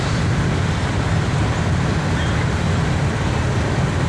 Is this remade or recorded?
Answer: recorded